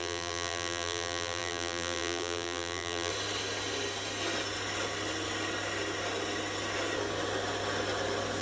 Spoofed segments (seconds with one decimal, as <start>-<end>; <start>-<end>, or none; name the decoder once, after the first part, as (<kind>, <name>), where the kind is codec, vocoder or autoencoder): 0.0-3.1 (vocoder, BigVGAN v2)

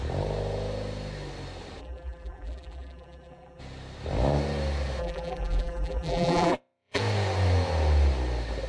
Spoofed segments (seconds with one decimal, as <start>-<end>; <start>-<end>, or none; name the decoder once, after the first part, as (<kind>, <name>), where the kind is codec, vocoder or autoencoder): 1.8-3.6 (vocoder, BigVGAN v2); 5.0-7.0

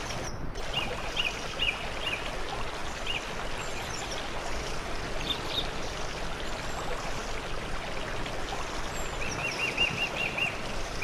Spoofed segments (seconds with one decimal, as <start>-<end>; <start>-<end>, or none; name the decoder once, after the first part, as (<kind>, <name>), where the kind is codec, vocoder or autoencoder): 9.4-10.5 (vocoder, BigVGAN v2)

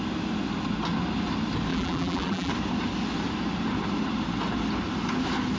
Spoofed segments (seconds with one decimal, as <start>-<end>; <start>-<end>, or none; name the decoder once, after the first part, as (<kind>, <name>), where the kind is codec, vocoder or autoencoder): 1.7-2.5 (vocoder, BigVGAN v2)

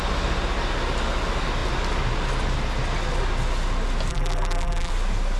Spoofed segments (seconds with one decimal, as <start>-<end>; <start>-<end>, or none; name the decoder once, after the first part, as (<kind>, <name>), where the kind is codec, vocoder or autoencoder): 4.1-4.9 (vocoder, BigVGAN v2)

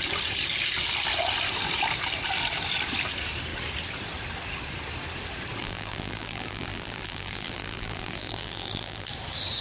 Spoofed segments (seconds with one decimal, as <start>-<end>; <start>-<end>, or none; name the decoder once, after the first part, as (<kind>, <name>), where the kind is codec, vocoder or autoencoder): 5.6-9.1 (vocoder, BigVGAN v2)